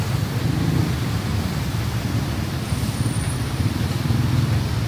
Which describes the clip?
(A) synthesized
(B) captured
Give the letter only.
A